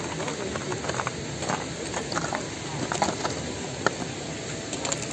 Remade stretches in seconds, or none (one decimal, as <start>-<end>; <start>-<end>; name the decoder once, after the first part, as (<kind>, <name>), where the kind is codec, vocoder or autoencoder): none